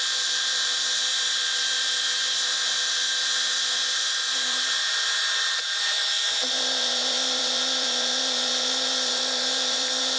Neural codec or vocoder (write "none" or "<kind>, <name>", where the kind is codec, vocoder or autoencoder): vocoder, BigVGAN v2